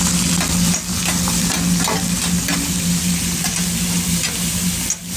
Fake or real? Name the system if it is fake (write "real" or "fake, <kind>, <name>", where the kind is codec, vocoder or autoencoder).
real